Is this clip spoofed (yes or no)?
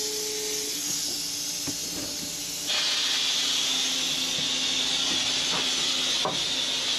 no